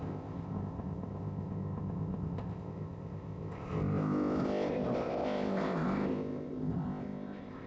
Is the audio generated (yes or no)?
yes